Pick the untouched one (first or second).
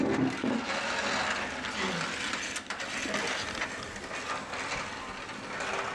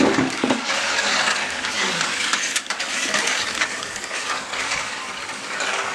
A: first